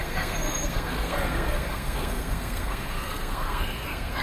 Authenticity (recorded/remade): remade